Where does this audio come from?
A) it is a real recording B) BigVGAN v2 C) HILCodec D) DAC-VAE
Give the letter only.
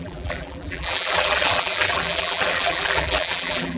B